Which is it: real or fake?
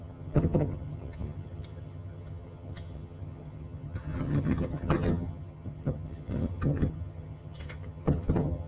fake